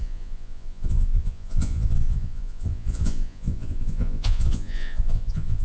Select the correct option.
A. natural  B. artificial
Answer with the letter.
B